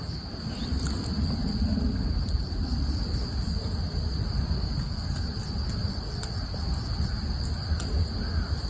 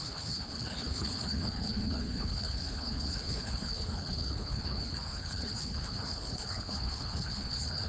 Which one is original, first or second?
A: first